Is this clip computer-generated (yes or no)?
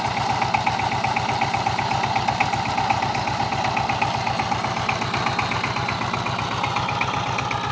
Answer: no